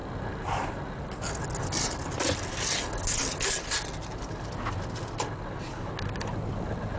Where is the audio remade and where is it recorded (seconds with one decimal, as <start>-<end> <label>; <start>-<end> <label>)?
0.0-7.0 recorded